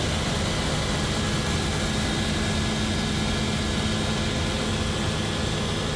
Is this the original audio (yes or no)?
yes